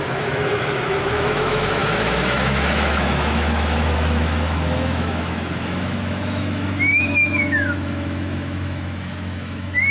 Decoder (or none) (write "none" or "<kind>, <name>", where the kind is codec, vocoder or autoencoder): autoencoder, DAC-VAE